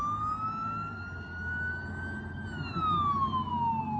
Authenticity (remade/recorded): recorded